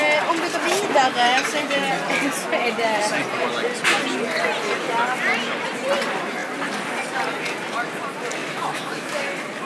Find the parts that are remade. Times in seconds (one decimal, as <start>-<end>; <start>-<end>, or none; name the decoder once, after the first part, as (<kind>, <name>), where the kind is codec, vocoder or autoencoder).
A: 8.4-9.2 (autoencoder, DAC-VAE)